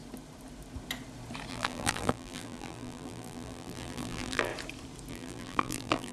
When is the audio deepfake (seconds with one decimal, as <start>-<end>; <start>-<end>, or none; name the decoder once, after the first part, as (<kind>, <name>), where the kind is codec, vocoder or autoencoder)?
1.5-4.5 (vocoder, BigVGAN v2); 5.1-6.1

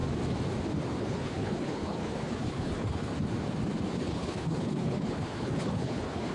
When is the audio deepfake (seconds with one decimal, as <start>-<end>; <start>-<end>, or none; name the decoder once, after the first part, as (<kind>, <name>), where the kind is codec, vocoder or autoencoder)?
1.0-3.1 (codec, HILCodec); 4.0-6.3

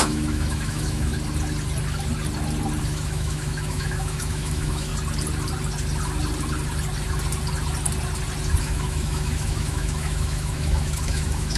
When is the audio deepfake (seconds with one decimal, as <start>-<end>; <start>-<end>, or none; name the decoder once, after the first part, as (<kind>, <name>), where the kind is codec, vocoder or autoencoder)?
0.0-1.1 (autoencoder, DAC-VAE); 2.8-4.9; 8.6-11.6